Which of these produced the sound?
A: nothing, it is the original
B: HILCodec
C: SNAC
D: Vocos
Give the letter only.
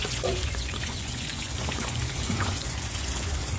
D